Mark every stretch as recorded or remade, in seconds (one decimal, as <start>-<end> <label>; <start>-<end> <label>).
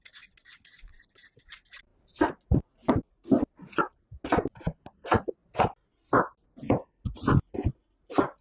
0.0-8.4 recorded